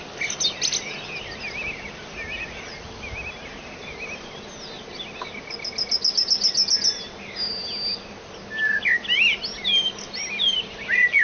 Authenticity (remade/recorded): recorded